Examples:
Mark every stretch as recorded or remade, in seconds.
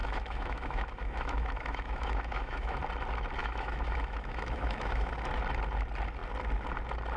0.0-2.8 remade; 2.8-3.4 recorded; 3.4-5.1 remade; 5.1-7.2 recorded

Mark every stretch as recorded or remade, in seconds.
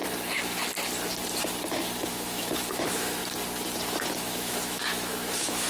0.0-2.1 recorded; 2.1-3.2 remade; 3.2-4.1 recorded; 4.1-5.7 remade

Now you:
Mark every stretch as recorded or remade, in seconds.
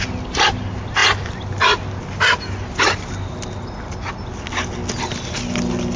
0.0-6.0 recorded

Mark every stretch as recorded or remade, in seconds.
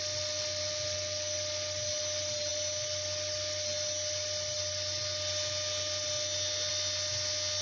0.0-7.6 recorded